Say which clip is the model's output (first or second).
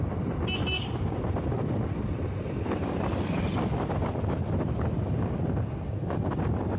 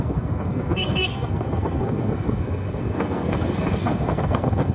second